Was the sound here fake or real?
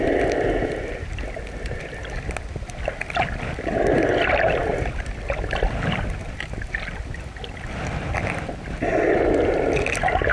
real